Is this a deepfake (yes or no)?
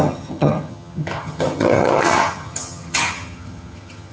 yes